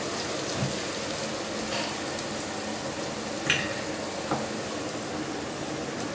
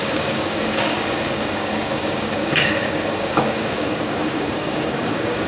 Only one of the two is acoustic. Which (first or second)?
first